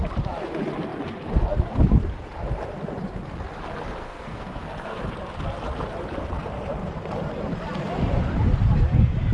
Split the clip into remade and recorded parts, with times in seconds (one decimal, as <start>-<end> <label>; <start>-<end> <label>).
0.0-4.0 recorded; 4.0-5.0 remade; 5.0-9.3 recorded